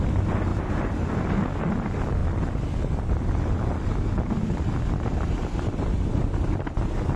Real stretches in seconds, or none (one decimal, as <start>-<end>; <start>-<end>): 0.0-0.5; 1.0-7.2